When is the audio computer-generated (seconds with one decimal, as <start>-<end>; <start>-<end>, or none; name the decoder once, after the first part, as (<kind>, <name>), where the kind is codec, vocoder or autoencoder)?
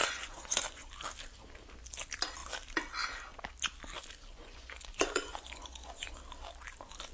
0.0-0.9 (vocoder, Vocos); 4.3-6.2